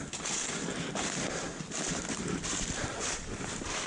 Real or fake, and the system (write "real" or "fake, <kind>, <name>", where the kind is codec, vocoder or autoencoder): real